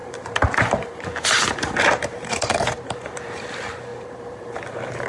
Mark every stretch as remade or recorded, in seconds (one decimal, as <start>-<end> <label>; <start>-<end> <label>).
0.0-5.1 remade